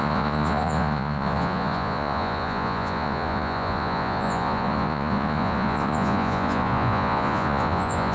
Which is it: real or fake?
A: fake